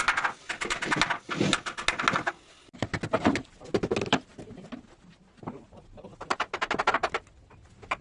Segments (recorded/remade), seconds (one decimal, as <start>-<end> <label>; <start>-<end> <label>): 0.0-8.0 recorded